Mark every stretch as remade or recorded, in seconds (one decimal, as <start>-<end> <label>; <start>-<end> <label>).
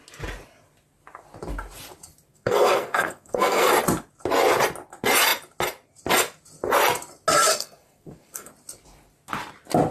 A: 0.0-2.3 recorded; 2.3-3.7 remade; 3.7-7.5 recorded; 7.5-8.5 remade; 8.5-9.9 recorded